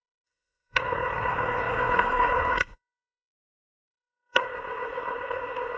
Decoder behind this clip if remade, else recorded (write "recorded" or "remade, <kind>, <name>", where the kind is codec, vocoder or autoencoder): remade, codec, SNAC